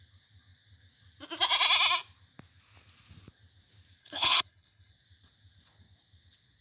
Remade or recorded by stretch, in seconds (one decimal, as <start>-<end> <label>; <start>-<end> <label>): 0.0-4.0 recorded; 4.0-4.9 remade; 4.9-6.6 recorded